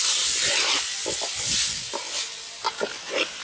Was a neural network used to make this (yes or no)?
no